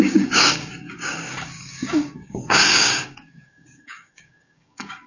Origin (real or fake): fake